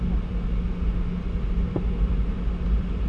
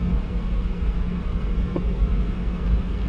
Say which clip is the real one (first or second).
first